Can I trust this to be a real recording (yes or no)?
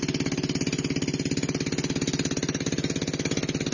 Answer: yes